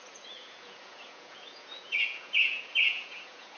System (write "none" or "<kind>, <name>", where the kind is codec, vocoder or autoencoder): vocoder, Vocos